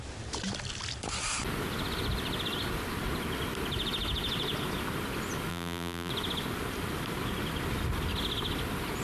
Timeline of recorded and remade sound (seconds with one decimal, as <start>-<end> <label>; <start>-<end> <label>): 0.0-5.5 recorded; 5.5-6.1 remade; 6.1-9.0 recorded